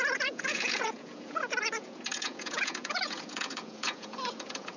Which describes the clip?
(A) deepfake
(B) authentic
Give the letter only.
A